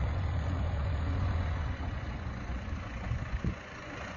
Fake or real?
fake